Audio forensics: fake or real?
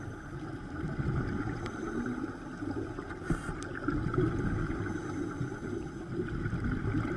real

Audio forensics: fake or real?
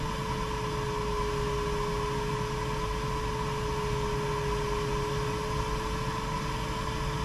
real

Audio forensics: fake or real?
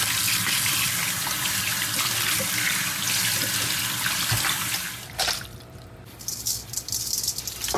fake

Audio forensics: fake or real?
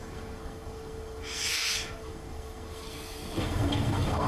fake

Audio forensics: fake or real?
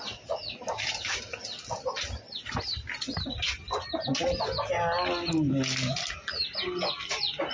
real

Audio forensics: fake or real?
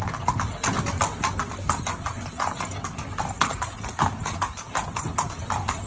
real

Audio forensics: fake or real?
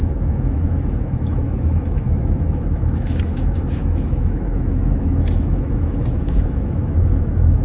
fake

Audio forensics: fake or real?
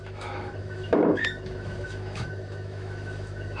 fake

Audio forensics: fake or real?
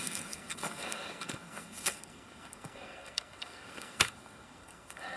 fake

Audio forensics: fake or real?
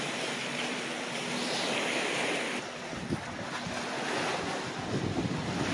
real